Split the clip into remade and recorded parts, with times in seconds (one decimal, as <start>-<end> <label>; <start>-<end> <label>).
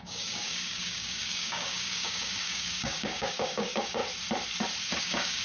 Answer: 0.0-4.0 remade; 4.0-5.0 recorded; 5.0-5.4 remade